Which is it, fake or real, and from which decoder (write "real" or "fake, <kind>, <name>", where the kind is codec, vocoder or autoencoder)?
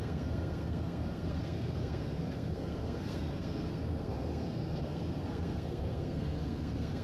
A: fake, codec, SNAC